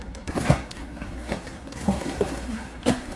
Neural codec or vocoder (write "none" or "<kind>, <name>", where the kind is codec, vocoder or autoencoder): codec, SNAC